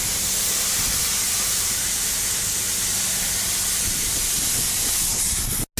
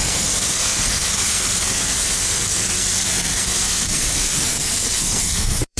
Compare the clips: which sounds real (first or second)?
first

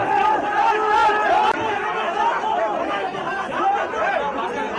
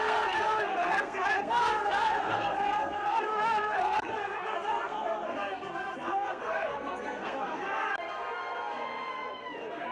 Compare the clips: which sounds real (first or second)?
first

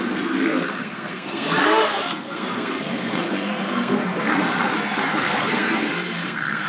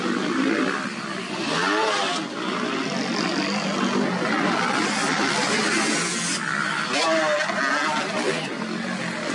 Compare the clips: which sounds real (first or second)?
second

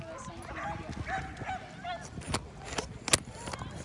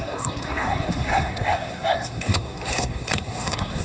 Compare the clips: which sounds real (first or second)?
first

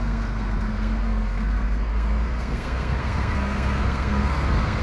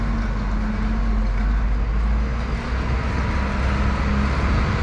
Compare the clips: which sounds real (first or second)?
second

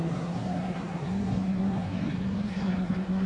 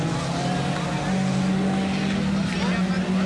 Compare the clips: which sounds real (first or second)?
second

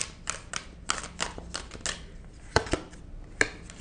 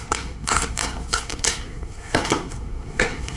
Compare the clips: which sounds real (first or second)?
first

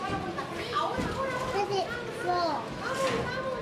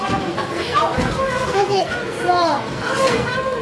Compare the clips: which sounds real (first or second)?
first